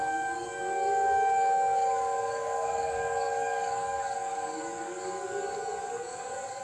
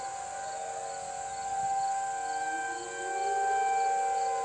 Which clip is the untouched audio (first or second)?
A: second